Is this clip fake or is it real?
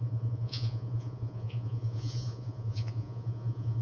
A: fake